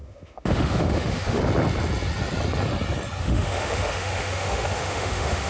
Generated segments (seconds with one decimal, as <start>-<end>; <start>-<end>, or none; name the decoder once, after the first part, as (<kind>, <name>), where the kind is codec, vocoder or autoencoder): 0.0-1.4 (autoencoder, DAC-VAE); 3.2-5.5